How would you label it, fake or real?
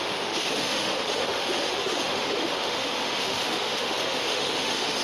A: fake